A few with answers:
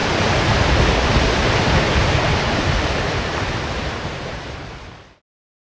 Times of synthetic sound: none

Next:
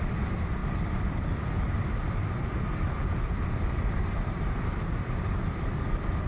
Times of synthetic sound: 0.6-1.6 (vocoder, BigVGAN v2); 2.2-6.3